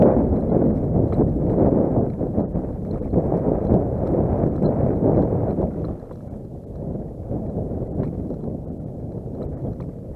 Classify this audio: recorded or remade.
recorded